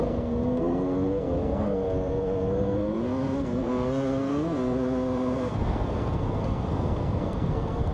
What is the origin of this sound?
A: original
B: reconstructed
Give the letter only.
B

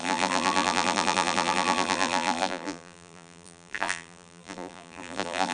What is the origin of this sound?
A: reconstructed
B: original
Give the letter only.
A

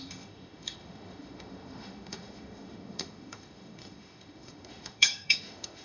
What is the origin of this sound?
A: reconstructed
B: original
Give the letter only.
A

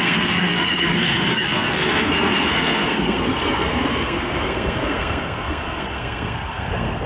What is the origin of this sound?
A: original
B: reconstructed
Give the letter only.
B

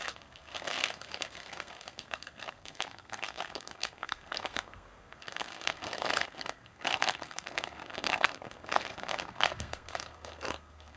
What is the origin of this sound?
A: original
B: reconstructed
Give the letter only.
B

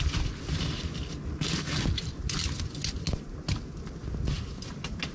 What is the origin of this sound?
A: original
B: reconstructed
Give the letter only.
A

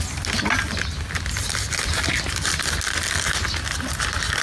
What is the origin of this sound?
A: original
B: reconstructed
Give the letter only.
A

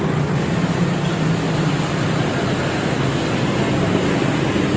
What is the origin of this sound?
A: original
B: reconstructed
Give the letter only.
A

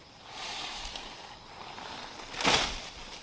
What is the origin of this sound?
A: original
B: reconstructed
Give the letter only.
A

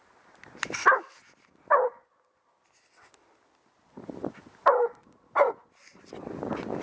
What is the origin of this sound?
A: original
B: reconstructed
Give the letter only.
A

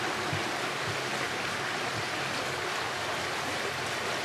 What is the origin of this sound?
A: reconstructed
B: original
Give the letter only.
B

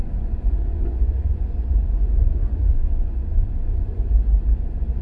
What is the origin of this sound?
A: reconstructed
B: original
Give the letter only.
A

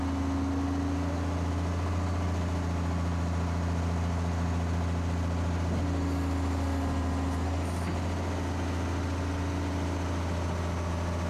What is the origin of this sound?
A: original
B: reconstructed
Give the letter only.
A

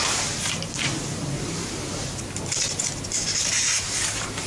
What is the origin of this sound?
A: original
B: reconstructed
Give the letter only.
B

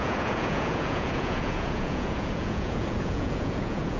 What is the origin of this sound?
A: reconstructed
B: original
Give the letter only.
A